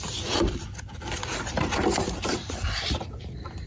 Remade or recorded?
remade